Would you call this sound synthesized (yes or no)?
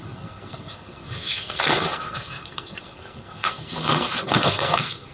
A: yes